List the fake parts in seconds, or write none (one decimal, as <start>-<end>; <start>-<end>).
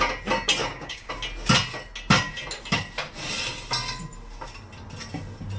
0.6-1.1